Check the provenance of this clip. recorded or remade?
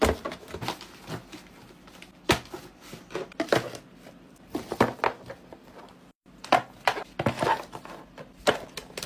recorded